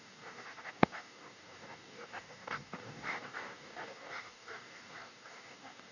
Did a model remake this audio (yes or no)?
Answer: yes